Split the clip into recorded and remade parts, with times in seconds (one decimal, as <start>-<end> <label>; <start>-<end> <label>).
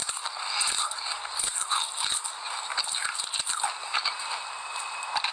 0.0-2.9 remade; 2.9-5.3 recorded